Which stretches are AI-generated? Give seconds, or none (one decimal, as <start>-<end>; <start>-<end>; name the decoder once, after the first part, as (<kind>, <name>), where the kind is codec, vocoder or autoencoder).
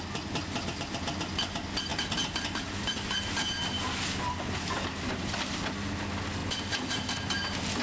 none